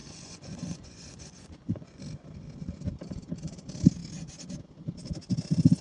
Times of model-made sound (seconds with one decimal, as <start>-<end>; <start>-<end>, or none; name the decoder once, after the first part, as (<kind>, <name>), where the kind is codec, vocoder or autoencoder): 0.0-2.0 (vocoder, Vocos)